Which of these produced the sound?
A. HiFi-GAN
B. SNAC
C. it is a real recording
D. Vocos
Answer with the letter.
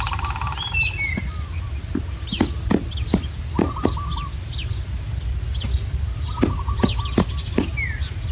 C